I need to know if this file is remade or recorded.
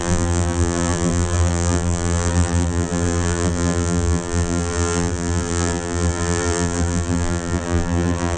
remade